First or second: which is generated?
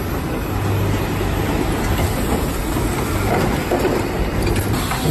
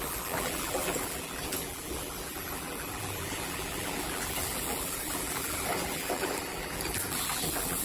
second